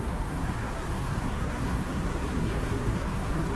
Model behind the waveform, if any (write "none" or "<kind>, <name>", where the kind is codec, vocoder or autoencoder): codec, SNAC